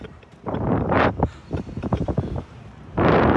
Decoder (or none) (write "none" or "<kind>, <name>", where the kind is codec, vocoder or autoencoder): vocoder, BigVGAN v2